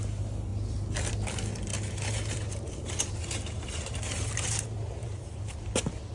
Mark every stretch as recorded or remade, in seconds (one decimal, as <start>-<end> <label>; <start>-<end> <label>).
0.0-1.7 recorded; 1.7-5.4 remade; 5.4-6.1 recorded